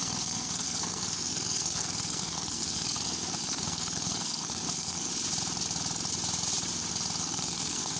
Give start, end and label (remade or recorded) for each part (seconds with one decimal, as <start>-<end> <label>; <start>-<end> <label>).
0.0-5.1 remade; 5.1-7.2 recorded; 7.2-8.0 remade